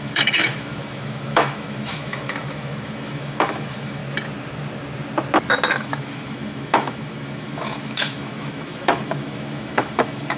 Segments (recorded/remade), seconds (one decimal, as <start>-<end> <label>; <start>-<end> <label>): 0.0-4.0 remade; 4.0-5.7 recorded; 5.7-10.4 remade